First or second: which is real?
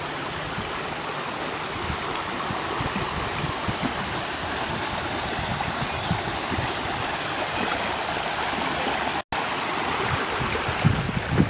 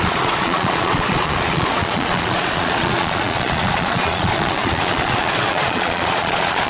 first